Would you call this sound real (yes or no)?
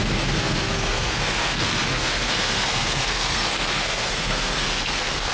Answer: no